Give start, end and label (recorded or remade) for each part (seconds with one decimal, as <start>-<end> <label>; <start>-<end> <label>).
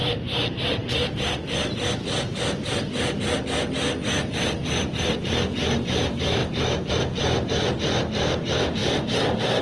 0.0-0.8 remade; 0.8-5.2 recorded; 5.2-6.4 remade; 6.4-6.9 recorded; 6.9-8.8 remade; 8.8-9.6 recorded